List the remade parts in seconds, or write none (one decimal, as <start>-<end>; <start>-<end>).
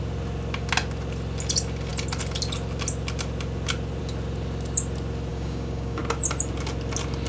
5.3-6.0